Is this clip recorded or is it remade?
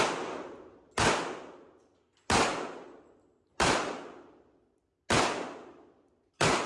recorded